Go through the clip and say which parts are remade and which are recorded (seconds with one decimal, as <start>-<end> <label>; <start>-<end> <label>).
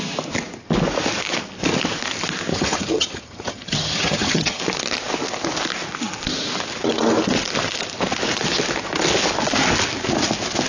0.0-2.5 recorded; 2.5-4.6 remade; 4.6-10.7 recorded